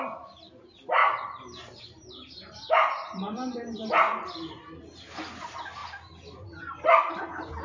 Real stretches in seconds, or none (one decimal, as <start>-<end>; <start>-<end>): 0.0-1.0; 3.9-7.6